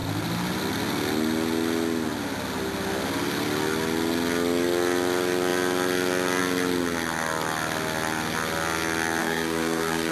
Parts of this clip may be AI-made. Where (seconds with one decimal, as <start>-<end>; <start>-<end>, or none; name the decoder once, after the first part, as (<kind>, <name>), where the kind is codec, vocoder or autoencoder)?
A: 9.2-10.1 (codec, SNAC)